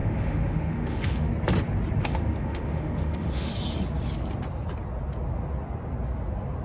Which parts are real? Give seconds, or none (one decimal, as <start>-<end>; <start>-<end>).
1.3-2.0; 3.5-6.6